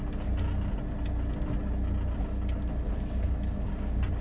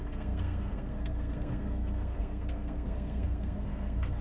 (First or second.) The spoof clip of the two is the second